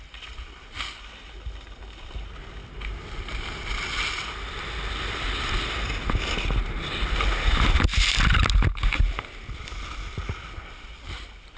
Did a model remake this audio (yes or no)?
no